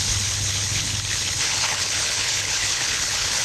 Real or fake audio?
fake